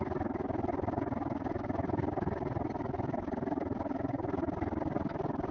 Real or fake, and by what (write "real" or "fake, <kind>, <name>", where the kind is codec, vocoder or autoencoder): real